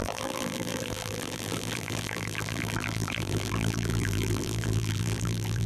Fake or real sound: fake